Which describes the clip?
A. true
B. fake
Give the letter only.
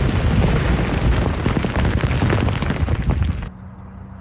A